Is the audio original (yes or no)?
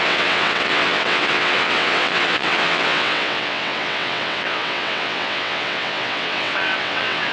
no